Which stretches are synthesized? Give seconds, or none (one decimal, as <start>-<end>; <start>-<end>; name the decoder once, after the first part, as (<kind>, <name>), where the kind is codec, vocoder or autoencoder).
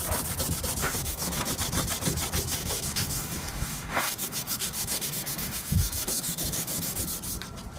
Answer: 0.8-1.5 (codec, DAC); 2.6-7.0